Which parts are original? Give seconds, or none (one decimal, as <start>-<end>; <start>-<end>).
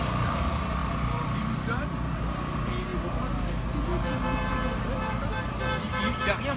0.0-6.6